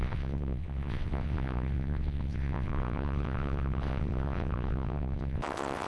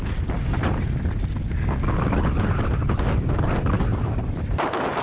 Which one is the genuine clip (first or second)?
second